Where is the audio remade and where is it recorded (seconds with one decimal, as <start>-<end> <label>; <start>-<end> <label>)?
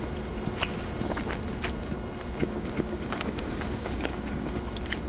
0.0-2.4 recorded; 2.4-4.6 remade; 4.6-5.1 recorded